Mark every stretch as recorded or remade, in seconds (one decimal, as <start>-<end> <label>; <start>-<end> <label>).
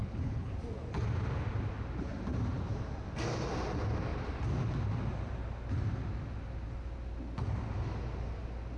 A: 0.0-0.5 remade; 0.5-8.8 recorded